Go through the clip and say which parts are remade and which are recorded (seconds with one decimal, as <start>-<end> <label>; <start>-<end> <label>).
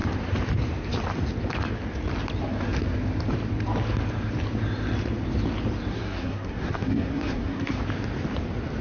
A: 0.0-5.9 recorded; 5.9-7.8 remade; 7.8-8.8 recorded